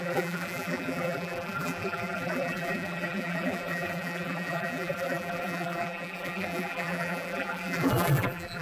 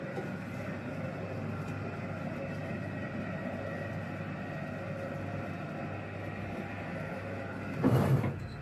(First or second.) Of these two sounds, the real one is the second